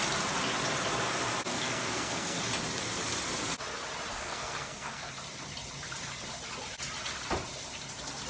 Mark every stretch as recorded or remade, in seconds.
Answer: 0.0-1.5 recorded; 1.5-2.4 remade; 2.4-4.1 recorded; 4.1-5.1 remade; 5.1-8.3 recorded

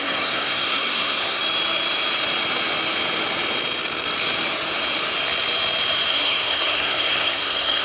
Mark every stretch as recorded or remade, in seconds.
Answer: 0.0-1.4 remade; 1.4-6.1 recorded; 6.1-7.8 remade